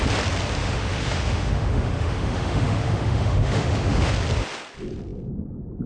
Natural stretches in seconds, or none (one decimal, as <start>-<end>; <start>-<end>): 0.0-0.6; 4.1-5.9